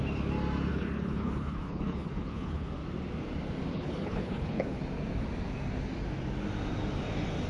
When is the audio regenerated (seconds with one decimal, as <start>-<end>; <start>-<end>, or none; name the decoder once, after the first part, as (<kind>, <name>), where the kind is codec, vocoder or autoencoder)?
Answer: 0.7-2.7 (codec, HILCodec); 3.7-4.8